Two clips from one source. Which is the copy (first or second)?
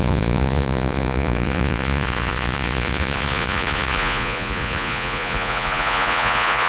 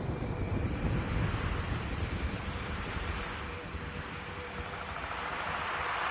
first